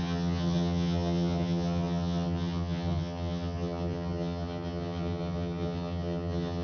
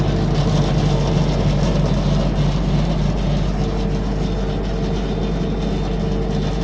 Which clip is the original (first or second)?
second